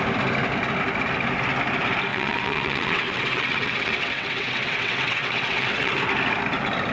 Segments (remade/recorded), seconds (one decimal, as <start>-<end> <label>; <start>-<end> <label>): 0.0-2.1 recorded; 2.1-5.9 remade; 5.9-6.9 recorded